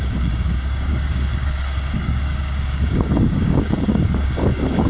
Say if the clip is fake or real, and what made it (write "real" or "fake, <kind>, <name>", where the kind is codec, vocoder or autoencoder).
fake, codec, DAC